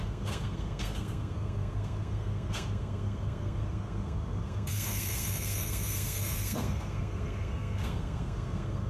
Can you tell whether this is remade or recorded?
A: remade